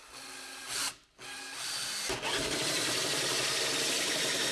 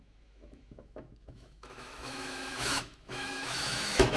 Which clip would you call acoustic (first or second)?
first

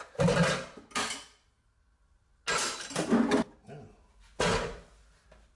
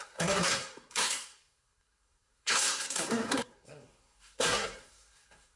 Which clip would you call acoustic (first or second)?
first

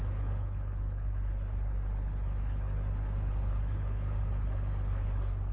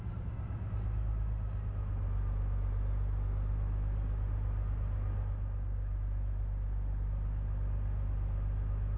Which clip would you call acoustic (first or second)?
second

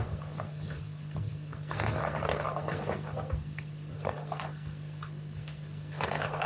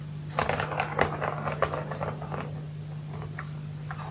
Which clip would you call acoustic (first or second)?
second